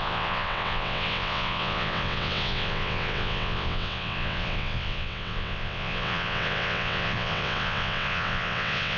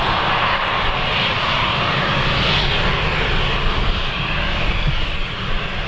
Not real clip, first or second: first